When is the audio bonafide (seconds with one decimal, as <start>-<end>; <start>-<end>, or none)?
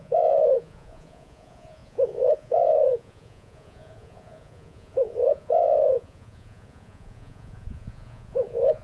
none